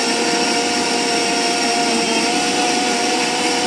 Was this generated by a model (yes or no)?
no